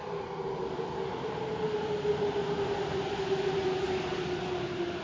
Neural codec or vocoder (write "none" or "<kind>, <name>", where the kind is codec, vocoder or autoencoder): none